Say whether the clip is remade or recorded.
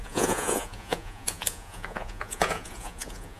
remade